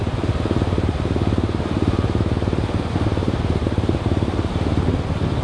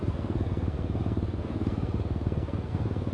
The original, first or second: first